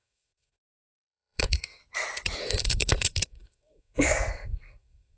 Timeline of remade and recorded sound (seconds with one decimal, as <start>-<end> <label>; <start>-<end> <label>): 0.0-1.8 remade; 1.8-2.4 recorded; 2.4-5.2 remade